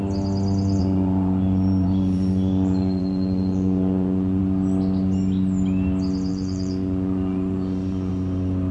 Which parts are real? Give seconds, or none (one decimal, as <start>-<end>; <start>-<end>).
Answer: 0.0-0.8; 4.4-6.3; 8.1-8.7